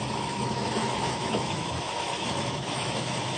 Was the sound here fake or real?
fake